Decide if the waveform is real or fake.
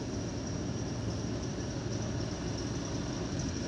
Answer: real